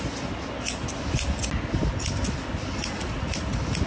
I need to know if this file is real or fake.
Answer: real